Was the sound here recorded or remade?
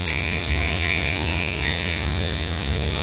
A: remade